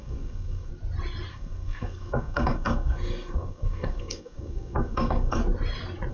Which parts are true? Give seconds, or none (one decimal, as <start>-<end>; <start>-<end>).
0.7-1.3; 5.4-6.1